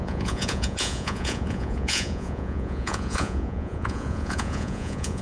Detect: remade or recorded remade